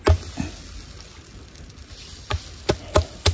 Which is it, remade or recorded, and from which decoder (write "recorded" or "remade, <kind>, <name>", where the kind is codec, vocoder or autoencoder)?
recorded